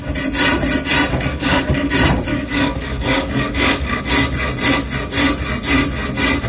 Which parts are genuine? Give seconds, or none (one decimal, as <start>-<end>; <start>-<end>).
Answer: 0.0-1.3; 1.9-2.3; 4.0-6.5